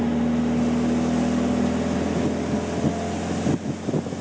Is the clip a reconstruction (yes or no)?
no